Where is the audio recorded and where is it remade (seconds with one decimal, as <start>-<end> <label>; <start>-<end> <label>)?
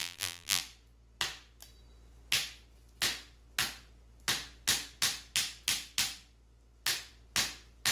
0.0-0.6 remade; 0.6-7.9 recorded